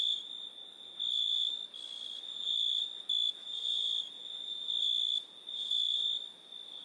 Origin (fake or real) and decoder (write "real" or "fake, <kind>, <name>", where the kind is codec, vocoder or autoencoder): real